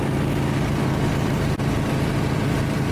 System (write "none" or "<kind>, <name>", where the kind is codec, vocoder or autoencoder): none